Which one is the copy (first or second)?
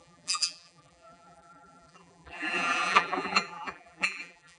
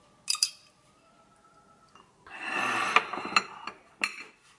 first